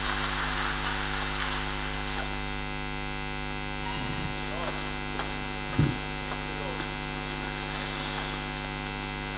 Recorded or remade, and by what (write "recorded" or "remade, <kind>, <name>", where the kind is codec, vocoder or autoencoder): recorded